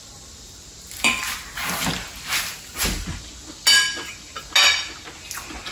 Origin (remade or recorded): recorded